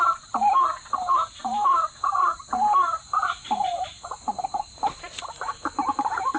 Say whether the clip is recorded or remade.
remade